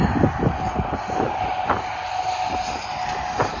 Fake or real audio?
real